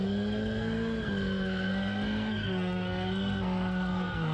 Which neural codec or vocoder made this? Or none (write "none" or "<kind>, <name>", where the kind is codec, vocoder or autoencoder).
codec, SNAC